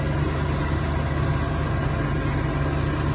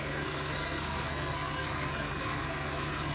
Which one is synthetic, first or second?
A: second